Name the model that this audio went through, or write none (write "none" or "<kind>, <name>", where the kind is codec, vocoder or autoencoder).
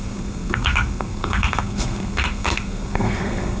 codec, SNAC